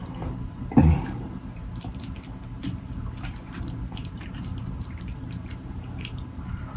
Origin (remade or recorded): remade